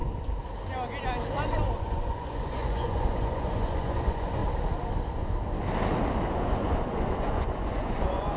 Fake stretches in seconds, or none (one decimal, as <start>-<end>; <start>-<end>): 1.8-4.4; 6.3-8.4